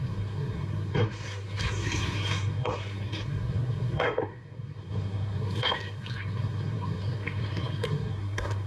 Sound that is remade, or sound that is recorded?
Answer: remade